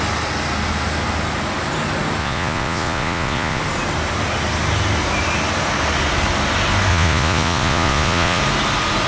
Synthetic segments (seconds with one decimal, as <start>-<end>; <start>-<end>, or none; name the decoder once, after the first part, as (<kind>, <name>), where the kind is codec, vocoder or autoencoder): 2.2-3.6 (vocoder, Vocos); 6.9-8.4